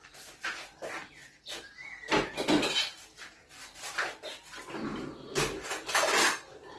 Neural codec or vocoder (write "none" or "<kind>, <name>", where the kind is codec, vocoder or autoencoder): none